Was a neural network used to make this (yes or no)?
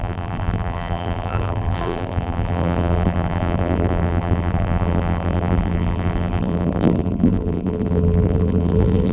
yes